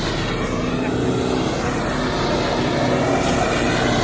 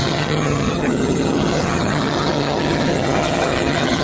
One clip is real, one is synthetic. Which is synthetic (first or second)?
second